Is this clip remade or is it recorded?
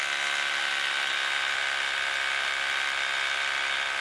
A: recorded